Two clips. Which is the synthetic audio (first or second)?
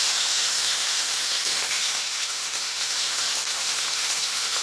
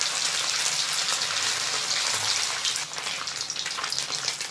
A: first